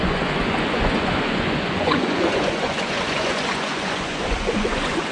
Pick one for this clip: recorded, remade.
remade